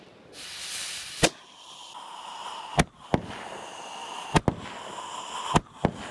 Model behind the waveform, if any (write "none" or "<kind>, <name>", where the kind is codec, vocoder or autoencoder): none